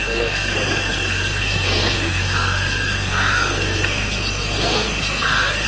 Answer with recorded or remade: remade